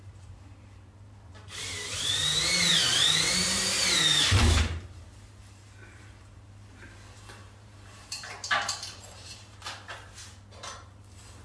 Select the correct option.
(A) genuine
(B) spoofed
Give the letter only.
B